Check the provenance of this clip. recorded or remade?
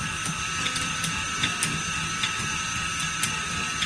recorded